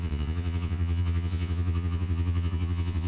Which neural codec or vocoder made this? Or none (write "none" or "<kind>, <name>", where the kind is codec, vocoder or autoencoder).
vocoder, Vocos